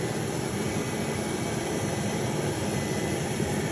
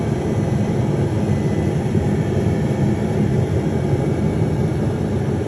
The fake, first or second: first